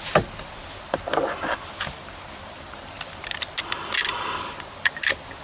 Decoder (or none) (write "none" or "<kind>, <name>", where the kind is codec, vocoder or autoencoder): none